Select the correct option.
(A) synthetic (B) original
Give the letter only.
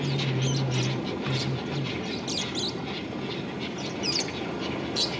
B